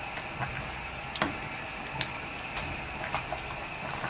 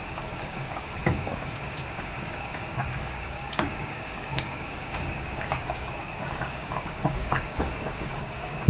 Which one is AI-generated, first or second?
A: second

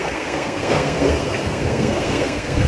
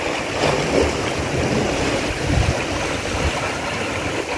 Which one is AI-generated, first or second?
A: first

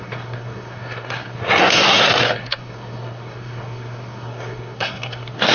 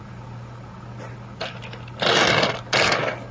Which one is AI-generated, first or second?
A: first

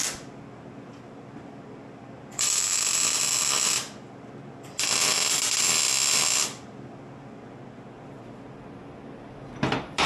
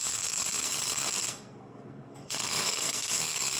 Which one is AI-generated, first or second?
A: second